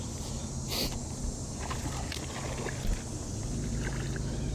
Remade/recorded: recorded